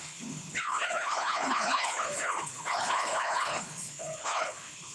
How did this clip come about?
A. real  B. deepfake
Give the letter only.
B